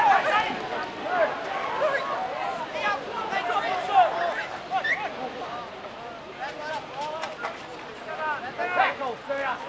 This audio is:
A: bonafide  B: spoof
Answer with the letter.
A